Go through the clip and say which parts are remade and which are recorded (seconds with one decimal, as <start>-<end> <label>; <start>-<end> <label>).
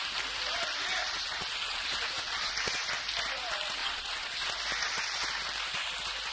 0.0-1.0 recorded; 1.0-2.5 remade; 2.5-3.8 recorded; 3.8-4.5 remade; 4.5-6.3 recorded